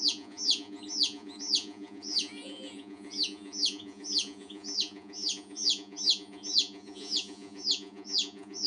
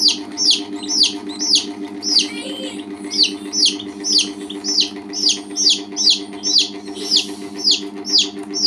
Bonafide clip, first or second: second